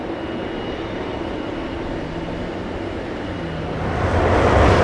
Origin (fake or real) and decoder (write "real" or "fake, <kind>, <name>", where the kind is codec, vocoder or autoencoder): real